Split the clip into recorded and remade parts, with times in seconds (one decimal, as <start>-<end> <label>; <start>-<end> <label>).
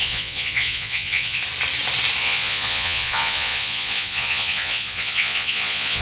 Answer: 0.0-1.4 remade; 1.4-2.2 recorded; 2.2-6.0 remade